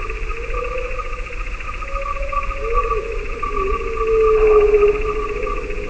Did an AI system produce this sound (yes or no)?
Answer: no